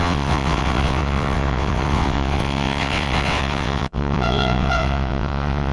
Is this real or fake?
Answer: fake